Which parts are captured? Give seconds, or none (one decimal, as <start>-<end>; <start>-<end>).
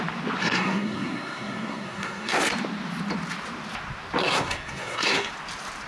0.0-0.4; 2.4-4.2; 5.3-5.9